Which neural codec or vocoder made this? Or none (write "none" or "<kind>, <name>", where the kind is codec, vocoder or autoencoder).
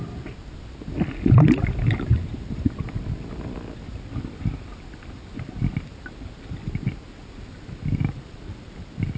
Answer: none